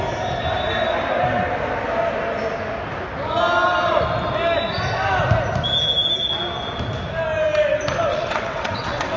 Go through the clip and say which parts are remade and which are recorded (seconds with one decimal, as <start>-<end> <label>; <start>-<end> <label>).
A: 0.0-8.1 recorded; 8.1-9.2 remade